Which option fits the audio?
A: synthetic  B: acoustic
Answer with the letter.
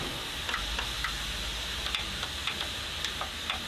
B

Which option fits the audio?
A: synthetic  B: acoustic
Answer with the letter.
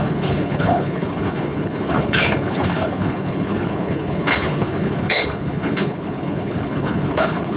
A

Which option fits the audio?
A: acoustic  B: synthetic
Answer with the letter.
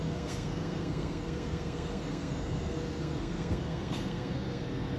B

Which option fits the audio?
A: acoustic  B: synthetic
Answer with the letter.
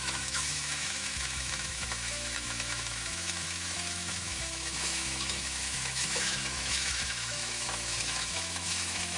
B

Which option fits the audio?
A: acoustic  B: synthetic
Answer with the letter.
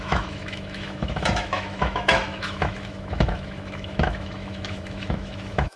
B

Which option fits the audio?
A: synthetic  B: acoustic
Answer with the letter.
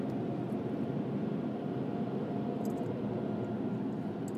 B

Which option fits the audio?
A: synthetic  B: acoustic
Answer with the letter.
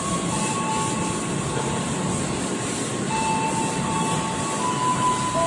B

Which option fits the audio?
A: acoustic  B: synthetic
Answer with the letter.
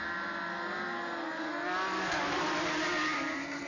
A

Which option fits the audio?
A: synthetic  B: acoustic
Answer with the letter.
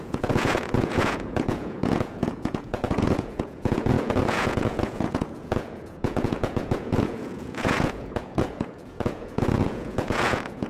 A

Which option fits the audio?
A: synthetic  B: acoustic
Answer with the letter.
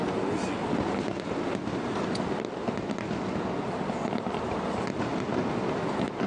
B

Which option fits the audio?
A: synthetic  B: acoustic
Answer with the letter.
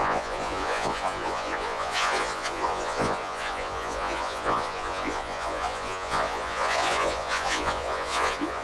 A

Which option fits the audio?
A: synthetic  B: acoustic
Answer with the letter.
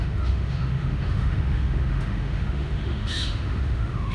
A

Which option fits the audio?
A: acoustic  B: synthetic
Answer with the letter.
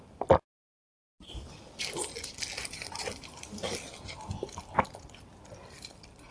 A